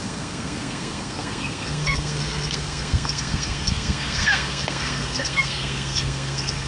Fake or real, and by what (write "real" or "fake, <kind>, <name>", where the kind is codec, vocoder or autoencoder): fake, codec, SNAC